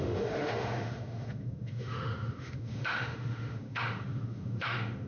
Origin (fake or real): fake